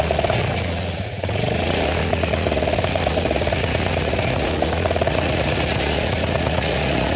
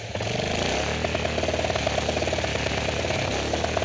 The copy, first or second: first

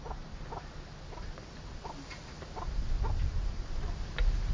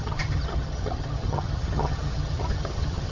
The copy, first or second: second